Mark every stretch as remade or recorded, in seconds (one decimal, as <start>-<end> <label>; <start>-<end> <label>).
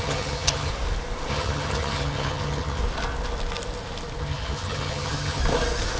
0.0-0.7 remade; 0.7-1.3 recorded; 1.3-2.8 remade; 2.8-4.2 recorded; 4.2-5.4 remade; 5.4-6.0 recorded